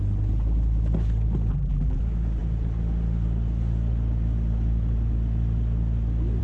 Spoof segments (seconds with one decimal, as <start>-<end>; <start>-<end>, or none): 1.5-2.0